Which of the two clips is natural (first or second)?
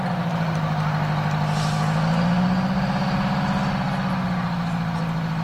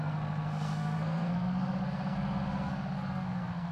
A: first